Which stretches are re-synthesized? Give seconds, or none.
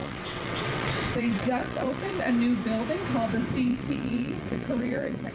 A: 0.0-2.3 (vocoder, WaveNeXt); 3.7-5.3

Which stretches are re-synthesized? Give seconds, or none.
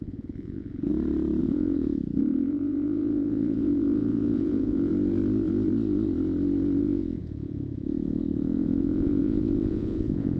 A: 0.0-0.9 (vocoder, Vocos); 1.4-4.9; 6.8-10.4